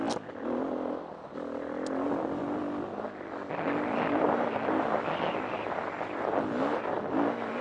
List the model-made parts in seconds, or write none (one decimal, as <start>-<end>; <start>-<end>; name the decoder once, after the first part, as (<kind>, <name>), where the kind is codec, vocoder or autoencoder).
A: none